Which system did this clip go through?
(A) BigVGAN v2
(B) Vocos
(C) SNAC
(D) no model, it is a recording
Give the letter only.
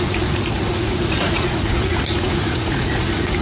B